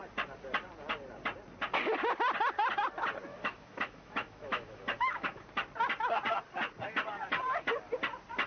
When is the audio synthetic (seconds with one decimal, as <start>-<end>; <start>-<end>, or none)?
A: 3.3-5.5